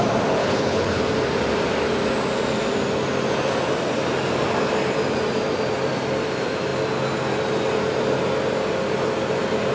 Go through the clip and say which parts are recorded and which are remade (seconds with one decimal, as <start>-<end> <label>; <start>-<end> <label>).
0.0-0.4 recorded; 0.4-1.0 remade; 1.0-9.7 recorded

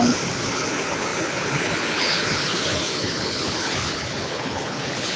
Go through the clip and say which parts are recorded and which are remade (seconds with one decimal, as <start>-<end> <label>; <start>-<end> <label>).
0.0-5.2 remade

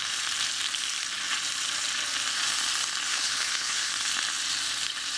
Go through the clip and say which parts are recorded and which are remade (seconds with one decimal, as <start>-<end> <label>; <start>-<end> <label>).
0.0-3.1 recorded; 3.1-3.9 remade; 3.9-5.2 recorded

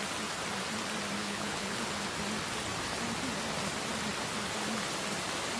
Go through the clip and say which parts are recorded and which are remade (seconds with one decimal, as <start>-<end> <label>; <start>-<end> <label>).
0.0-1.2 recorded; 1.2-1.8 remade; 1.8-5.6 recorded

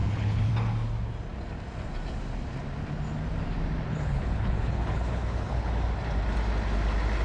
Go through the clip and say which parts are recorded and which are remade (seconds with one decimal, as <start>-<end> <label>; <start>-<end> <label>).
0.0-0.5 remade; 0.5-3.9 recorded; 3.9-5.7 remade; 5.7-7.2 recorded

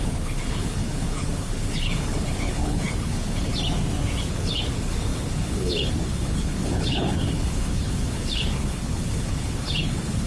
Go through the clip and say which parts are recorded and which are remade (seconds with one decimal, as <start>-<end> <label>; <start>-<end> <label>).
0.0-3.5 remade; 3.5-4.3 recorded; 4.3-10.3 remade

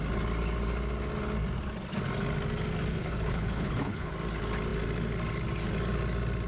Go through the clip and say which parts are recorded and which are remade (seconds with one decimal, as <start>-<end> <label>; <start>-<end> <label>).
0.0-2.9 recorded; 2.9-4.1 remade; 4.1-6.5 recorded